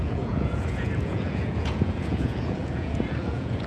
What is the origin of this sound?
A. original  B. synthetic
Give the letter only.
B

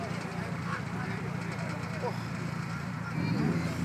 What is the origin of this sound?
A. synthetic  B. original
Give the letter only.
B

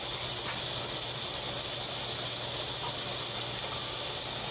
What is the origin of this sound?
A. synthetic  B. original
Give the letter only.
B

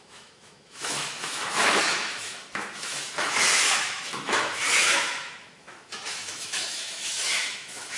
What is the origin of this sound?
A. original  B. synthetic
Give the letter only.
B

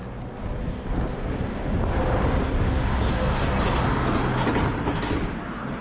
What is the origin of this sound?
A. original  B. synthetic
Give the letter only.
A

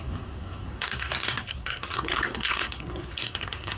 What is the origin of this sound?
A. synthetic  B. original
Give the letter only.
A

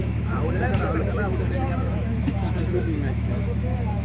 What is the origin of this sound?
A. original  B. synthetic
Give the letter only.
B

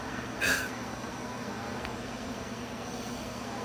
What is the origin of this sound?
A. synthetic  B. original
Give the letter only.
A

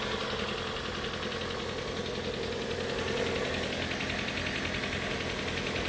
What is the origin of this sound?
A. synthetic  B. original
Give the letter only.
B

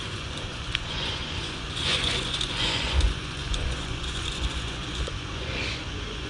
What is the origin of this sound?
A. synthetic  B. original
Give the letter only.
A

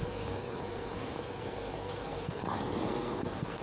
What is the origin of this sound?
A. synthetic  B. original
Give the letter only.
A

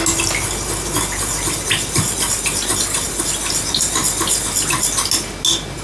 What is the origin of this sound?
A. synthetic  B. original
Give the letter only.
B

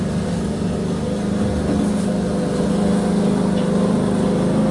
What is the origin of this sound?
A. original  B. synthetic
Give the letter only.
A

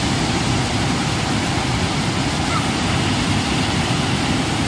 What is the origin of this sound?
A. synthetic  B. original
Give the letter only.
B